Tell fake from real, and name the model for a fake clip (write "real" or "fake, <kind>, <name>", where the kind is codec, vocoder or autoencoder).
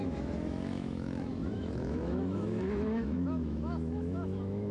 fake, autoencoder, DAC-VAE